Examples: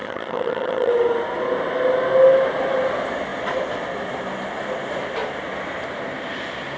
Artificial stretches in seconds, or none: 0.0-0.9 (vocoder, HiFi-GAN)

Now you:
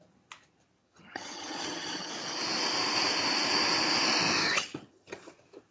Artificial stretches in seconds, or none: 0.8-2.1 (vocoder, HiFi-GAN); 4.4-5.3

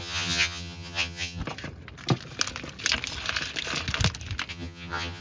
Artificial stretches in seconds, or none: 0.0-1.4 (vocoder, HiFi-GAN); 4.5-5.2

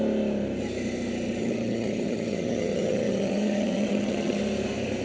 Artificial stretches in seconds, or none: 1.4-4.4 (vocoder, HiFi-GAN)

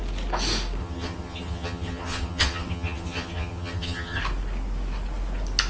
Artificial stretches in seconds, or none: 0.8-4.2 (vocoder, HiFi-GAN)

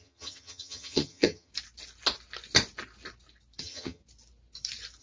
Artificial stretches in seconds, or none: 0.0-1.5 (vocoder, HiFi-GAN); 3.6-4.0

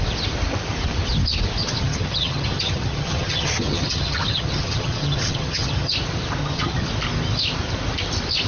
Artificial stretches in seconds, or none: 1.6-5.9 (vocoder, HiFi-GAN); 6.4-6.9